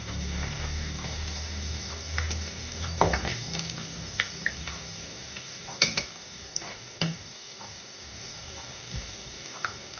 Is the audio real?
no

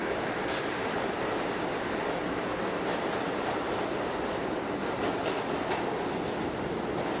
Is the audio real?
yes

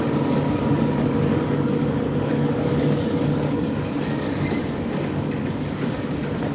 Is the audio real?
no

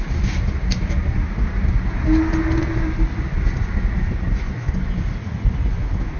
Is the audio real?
yes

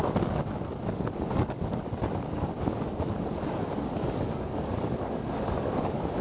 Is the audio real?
no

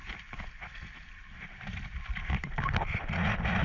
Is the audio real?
yes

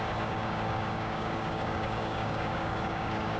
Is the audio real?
no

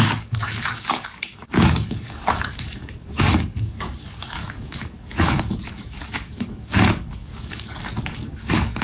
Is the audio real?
no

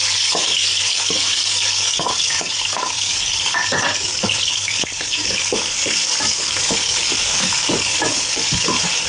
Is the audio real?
no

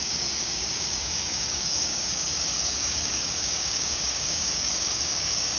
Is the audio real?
no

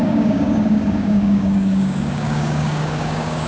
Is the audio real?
no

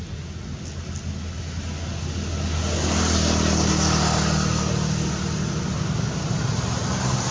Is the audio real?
yes